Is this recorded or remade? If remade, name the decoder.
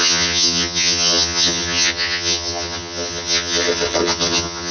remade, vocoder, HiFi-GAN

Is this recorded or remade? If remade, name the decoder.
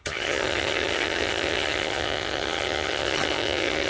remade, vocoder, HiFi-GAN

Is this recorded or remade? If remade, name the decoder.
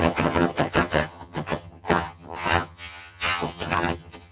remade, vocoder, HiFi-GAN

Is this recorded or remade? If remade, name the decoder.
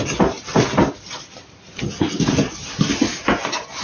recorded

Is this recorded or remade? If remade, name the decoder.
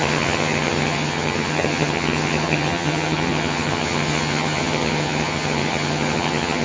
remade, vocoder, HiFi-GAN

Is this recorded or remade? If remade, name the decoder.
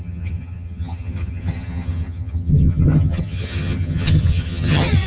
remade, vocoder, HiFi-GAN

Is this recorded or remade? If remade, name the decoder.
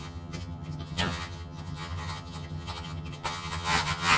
remade, vocoder, HiFi-GAN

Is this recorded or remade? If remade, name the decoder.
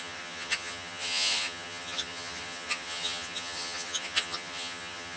remade, vocoder, HiFi-GAN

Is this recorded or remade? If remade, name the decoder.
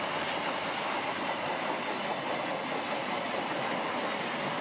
recorded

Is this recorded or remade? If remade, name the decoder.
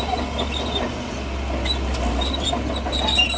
recorded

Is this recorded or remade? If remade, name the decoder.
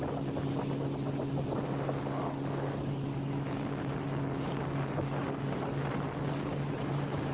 recorded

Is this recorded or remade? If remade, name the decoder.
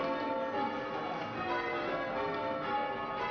recorded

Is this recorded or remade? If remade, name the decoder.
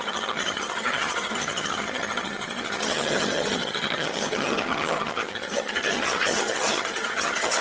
remade, vocoder, HiFi-GAN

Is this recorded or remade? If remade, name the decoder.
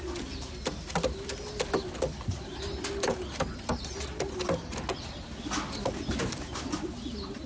recorded